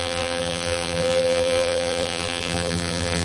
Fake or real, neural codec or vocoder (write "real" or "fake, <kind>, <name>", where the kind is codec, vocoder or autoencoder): fake, vocoder, BigVGAN v2